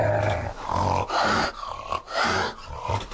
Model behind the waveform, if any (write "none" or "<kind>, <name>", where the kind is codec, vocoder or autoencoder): none